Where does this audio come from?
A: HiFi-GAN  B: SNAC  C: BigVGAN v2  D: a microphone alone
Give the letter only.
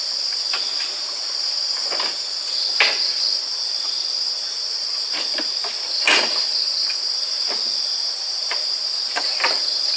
D